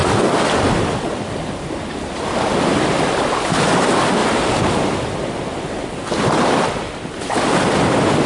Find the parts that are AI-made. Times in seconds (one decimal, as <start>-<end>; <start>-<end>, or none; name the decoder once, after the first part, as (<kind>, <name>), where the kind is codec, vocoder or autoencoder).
none